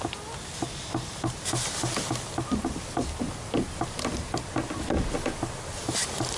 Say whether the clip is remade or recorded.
recorded